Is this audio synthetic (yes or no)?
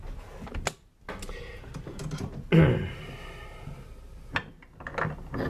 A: no